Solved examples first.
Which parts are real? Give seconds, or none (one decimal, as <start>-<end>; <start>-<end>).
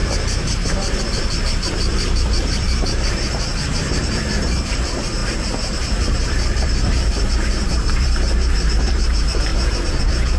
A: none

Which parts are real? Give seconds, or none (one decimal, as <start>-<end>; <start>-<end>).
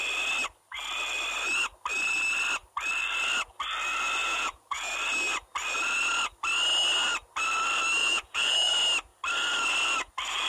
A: 0.0-4.2; 4.9-8.0; 8.7-10.5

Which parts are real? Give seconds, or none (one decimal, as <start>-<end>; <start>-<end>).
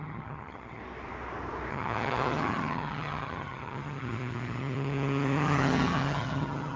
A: 0.8-1.7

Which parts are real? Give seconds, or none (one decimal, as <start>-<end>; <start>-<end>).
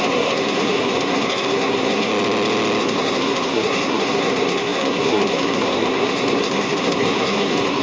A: 2.1-2.8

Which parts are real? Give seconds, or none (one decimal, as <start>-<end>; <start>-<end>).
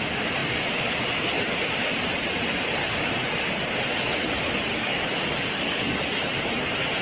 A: 0.0-4.7; 6.0-7.0